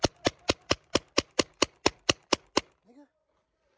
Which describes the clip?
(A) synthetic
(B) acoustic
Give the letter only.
B